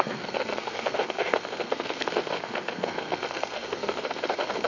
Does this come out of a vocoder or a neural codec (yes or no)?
yes